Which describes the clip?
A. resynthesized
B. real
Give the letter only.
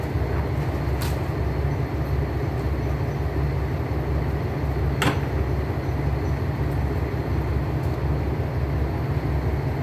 B